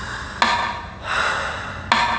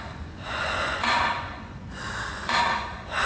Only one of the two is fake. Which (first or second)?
second